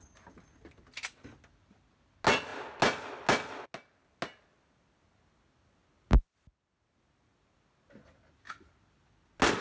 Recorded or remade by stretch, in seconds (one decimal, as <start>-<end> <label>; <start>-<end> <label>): 0.0-9.6 recorded